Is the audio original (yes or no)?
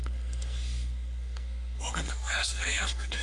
no